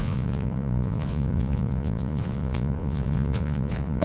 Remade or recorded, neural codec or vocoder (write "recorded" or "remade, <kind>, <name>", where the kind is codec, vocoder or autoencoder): remade, vocoder, Vocos